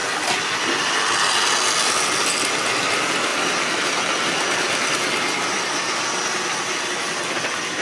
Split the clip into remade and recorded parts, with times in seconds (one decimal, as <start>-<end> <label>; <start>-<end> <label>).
0.0-7.8 recorded